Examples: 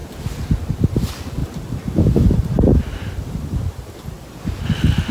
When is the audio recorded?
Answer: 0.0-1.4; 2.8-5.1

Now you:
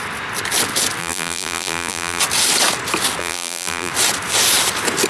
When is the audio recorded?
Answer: 0.0-1.0; 2.2-3.2; 3.9-5.1

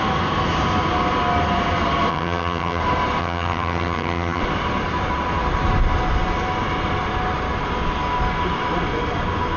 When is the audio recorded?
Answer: 0.0-2.1; 2.8-3.2; 4.4-9.6

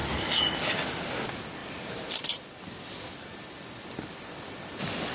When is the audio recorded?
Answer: 0.0-1.6